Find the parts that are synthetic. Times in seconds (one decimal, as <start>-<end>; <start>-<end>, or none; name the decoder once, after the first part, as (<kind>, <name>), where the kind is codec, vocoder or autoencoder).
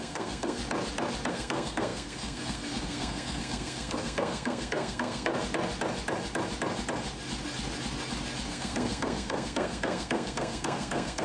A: 0.0-0.6 (codec, SNAC); 1.3-5.3; 8.5-11.2